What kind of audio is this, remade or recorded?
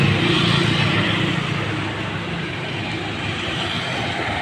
recorded